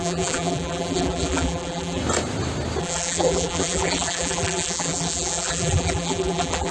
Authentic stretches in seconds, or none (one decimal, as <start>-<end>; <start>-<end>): 2.0-2.8